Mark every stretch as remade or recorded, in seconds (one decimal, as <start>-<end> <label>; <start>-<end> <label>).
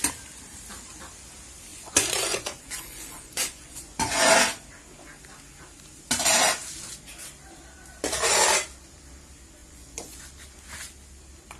0.0-1.7 recorded; 1.7-4.3 remade; 4.3-9.6 recorded; 9.6-10.2 remade; 10.2-11.6 recorded